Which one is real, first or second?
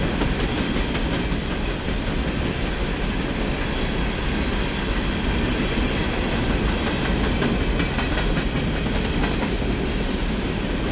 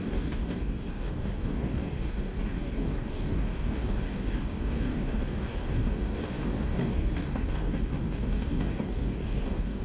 first